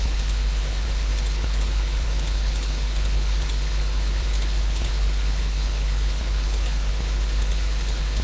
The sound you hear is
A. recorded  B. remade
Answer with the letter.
B